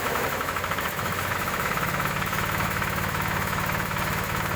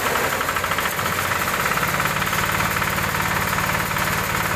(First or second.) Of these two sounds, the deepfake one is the first